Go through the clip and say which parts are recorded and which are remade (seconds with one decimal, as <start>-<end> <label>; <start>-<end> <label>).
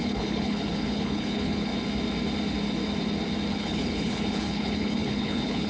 0.0-1.7 remade; 1.7-3.5 recorded; 3.5-5.7 remade